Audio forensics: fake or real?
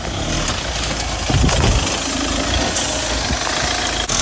real